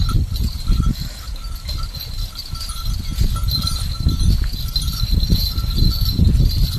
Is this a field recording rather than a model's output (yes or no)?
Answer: yes